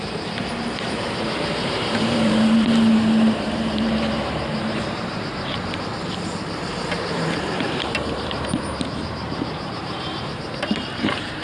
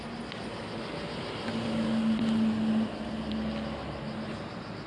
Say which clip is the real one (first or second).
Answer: second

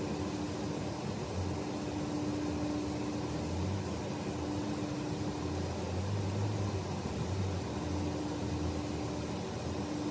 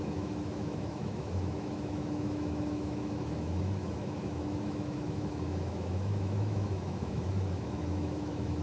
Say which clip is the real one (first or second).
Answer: first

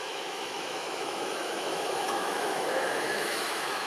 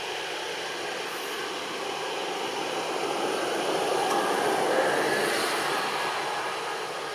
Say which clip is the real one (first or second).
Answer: second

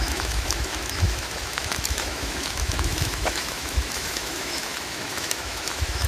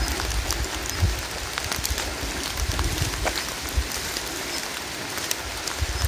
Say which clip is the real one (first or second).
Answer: second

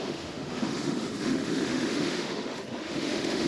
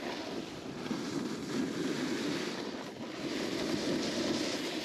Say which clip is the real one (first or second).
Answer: second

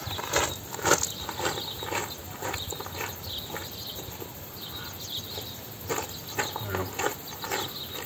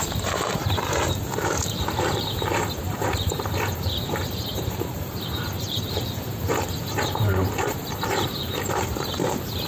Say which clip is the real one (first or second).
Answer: first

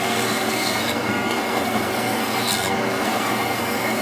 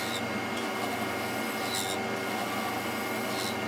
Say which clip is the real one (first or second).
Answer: second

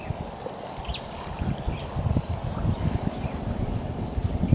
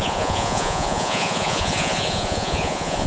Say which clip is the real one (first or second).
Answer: first